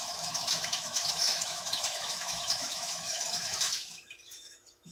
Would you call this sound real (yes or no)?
no